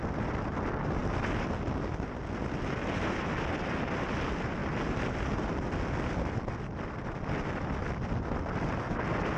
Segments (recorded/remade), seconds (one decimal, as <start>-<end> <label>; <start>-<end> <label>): 0.0-9.4 recorded